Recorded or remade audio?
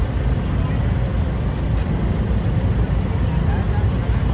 recorded